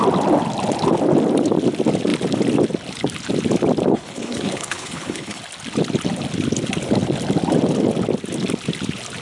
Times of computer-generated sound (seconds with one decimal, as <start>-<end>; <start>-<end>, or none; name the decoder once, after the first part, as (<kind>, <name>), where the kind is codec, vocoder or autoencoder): 3.9-5.4 (codec, HILCodec)

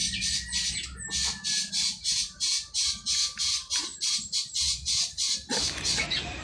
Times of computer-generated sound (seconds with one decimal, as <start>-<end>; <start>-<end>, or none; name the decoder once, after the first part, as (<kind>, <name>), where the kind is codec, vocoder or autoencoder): 1.7-6.4 (vocoder, BigVGAN v2)

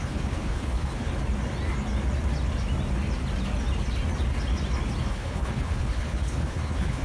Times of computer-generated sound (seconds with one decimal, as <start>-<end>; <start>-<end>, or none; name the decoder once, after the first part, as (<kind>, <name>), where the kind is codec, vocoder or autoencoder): 0.0-1.1 (codec, HILCodec); 5.0-7.0

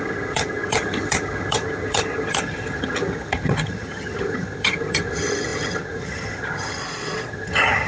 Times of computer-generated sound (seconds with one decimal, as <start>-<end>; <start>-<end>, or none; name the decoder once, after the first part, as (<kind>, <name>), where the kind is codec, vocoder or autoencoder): 0.0-6.8 (vocoder, HiFi-GAN); 7.3-7.9

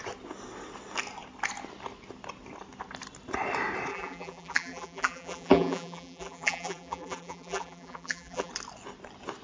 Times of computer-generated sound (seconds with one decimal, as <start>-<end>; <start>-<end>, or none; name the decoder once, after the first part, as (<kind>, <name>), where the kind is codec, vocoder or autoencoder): 3.9-8.5 (vocoder, BigVGAN v2)